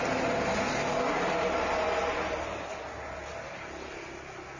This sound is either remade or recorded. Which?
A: recorded